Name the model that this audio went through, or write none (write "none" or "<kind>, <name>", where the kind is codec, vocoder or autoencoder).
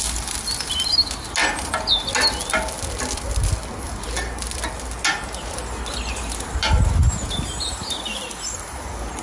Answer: none